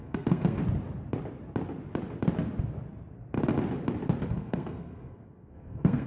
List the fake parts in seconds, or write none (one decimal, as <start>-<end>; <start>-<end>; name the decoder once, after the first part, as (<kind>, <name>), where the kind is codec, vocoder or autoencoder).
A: 0.0-0.6 (codec, SNAC); 4.3-6.1